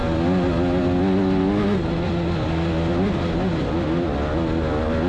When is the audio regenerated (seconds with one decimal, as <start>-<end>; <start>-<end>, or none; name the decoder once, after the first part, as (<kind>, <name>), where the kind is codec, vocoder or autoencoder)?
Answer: none